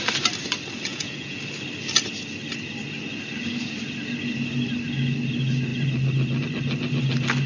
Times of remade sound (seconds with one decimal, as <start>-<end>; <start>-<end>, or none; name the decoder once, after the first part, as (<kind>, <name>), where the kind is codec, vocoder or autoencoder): 0.9-1.4 (vocoder, Vocos)